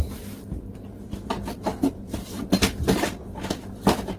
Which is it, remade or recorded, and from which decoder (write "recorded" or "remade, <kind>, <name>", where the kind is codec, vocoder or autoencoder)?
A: recorded